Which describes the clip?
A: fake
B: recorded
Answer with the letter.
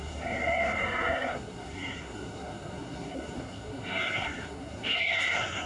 A